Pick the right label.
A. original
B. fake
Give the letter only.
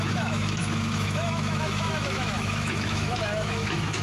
B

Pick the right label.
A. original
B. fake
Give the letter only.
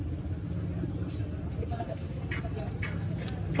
A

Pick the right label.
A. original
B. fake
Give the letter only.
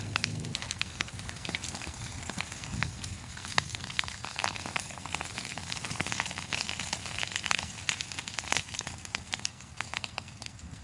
B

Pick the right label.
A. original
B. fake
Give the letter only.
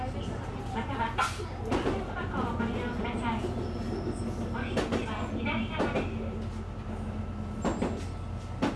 A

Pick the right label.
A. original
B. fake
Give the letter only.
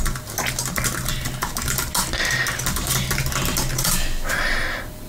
A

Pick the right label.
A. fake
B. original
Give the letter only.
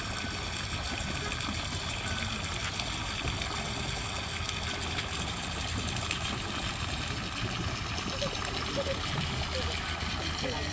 B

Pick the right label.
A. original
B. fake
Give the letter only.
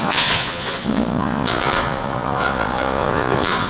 B